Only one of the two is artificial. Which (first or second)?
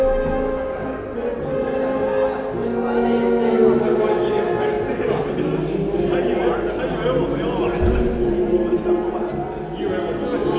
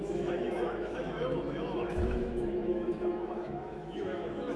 second